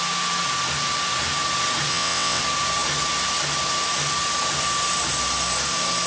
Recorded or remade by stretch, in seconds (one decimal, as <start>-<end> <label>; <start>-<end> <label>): 0.0-1.9 recorded; 1.9-2.4 remade; 2.4-6.1 recorded